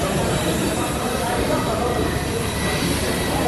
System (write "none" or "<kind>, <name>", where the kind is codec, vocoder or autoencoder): vocoder, BigVGAN v2